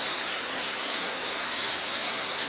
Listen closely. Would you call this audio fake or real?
fake